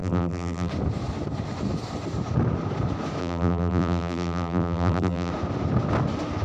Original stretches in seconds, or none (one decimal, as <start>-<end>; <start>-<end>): 0.7-3.2; 5.3-6.4